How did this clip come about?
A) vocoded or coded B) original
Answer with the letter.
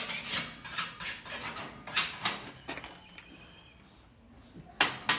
B